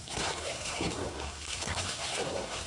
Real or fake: fake